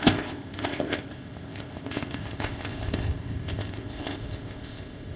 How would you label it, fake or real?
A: fake